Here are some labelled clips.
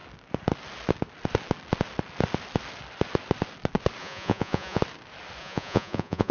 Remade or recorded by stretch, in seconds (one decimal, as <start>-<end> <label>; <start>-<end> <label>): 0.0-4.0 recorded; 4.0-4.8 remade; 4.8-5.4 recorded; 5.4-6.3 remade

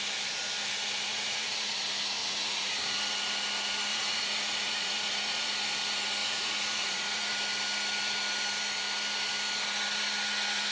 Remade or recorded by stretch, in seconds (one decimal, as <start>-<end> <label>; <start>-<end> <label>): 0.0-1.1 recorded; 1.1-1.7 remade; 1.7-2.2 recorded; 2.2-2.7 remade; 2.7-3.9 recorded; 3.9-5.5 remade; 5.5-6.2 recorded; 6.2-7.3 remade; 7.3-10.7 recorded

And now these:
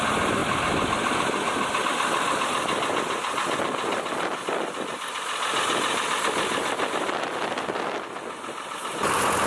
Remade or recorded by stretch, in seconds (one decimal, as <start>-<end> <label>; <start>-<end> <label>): 0.0-9.5 recorded

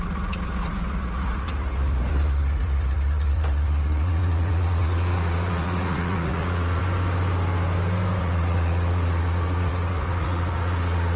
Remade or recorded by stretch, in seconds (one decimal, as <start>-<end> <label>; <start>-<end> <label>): 0.0-6.8 remade; 6.8-8.2 recorded; 8.2-11.2 remade

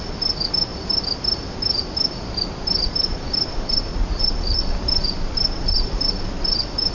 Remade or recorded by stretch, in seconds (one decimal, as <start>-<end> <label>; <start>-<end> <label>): 0.0-3.9 recorded; 3.9-4.6 remade; 4.6-6.9 recorded

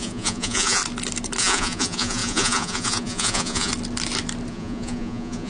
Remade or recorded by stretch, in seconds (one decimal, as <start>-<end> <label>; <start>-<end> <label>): 0.0-0.8 remade; 0.8-1.4 recorded; 1.4-3.7 remade; 3.7-4.5 recorded; 4.5-5.5 remade